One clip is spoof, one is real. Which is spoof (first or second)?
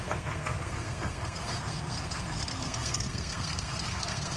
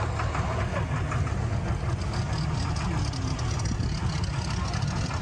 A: first